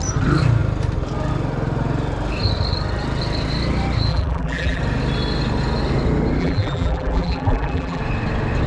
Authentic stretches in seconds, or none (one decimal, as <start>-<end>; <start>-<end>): 0.0-4.1; 4.8-6.4; 8.0-8.7